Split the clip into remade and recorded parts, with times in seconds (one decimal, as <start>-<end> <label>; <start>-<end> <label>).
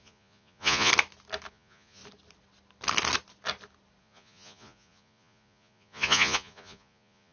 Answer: 0.0-0.9 remade; 0.9-1.5 recorded; 1.5-2.0 remade; 2.0-4.0 recorded; 4.0-7.3 remade